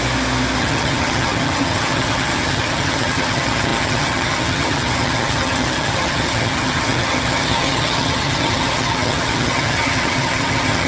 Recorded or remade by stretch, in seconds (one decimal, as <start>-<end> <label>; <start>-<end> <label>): 0.0-0.6 recorded; 0.6-10.9 remade